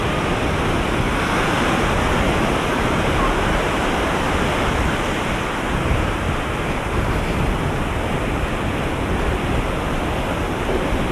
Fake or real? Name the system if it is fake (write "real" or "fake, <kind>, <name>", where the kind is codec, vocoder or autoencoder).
real